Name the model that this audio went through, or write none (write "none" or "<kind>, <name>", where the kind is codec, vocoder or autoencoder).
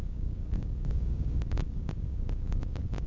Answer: codec, DAC